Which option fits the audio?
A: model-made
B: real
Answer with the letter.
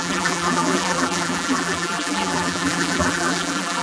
A